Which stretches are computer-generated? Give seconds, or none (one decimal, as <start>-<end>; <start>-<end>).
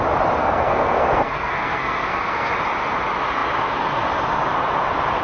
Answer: 0.4-2.5